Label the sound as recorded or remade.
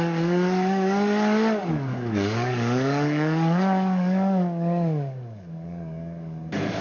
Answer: remade